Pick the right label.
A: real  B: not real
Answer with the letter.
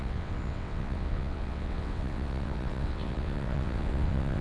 B